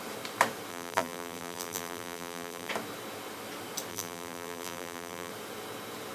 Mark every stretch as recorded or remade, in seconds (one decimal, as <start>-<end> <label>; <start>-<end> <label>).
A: 0.0-0.7 recorded; 0.7-2.7 remade; 2.7-3.9 recorded; 3.9-5.3 remade; 5.3-6.1 recorded